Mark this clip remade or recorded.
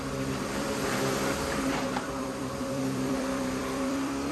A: remade